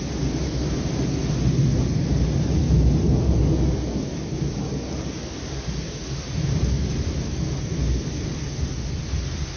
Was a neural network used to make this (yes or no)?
no